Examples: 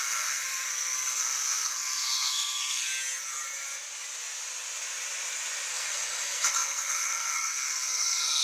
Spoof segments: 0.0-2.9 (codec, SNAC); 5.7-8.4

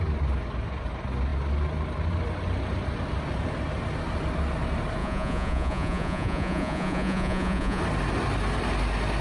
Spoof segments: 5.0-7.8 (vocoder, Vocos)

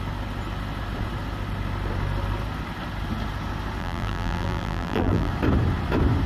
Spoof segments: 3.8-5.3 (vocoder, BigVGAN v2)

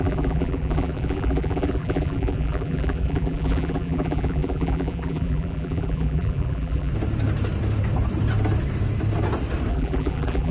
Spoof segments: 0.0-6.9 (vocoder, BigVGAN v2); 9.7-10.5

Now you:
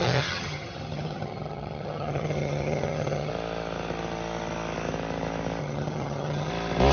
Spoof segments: 0.0-3.3 (vocoder, HiFi-GAN); 5.6-6.5